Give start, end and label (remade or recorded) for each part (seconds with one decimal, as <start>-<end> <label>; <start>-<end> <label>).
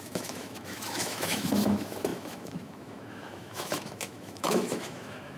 0.0-5.4 remade